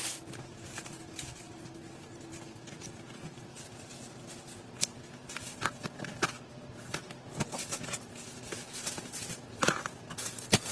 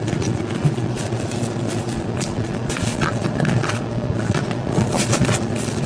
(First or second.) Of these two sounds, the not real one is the second